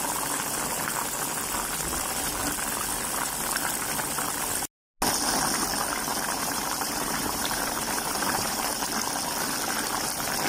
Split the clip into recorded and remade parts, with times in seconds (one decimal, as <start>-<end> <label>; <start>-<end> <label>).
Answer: 0.0-6.1 recorded; 6.1-8.9 remade; 8.9-10.5 recorded